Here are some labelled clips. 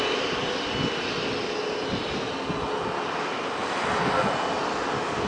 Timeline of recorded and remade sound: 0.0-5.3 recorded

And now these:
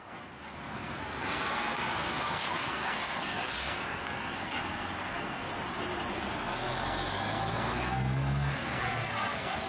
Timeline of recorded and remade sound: 0.0-5.5 remade; 5.5-6.1 recorded; 6.1-9.7 remade

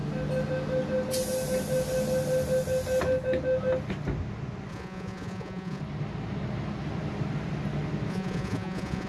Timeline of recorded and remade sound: 0.0-4.7 recorded; 4.7-5.8 remade; 5.8-8.1 recorded; 8.1-9.1 remade

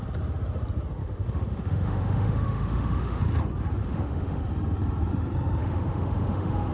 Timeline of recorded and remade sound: 0.0-1.0 recorded; 1.0-3.2 remade; 3.2-3.8 recorded; 3.8-4.4 remade; 4.4-5.6 recorded; 5.6-6.7 remade